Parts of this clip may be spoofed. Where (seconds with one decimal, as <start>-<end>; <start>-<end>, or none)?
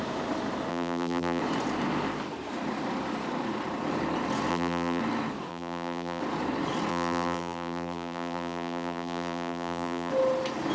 0.7-1.4; 4.5-5.0; 5.5-6.2; 6.9-10.1